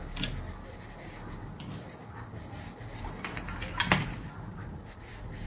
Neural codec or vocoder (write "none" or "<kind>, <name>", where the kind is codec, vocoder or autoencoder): none